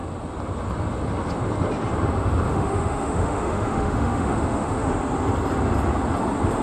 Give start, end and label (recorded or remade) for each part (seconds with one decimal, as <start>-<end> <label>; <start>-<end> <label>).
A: 0.0-2.5 recorded; 2.5-4.9 remade; 4.9-6.6 recorded